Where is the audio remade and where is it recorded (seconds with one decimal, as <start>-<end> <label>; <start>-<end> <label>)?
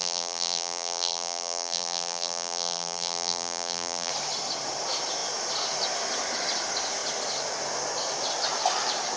0.0-4.1 remade; 4.1-9.2 recorded